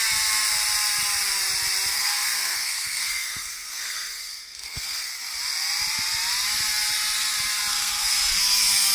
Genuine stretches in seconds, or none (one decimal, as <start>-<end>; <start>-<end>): 0.0-1.9; 5.1-7.7; 8.4-8.9